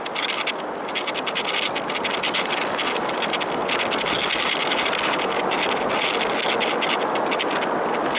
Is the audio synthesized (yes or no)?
no